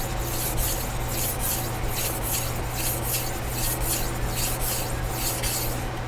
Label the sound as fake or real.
real